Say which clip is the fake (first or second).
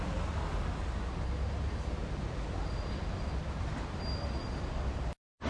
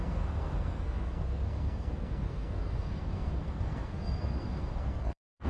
second